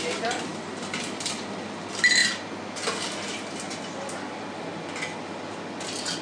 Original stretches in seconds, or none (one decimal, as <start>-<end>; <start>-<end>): 0.0-6.2